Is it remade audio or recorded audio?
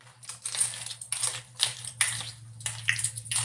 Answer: recorded